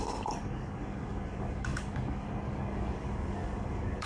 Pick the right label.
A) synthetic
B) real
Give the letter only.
A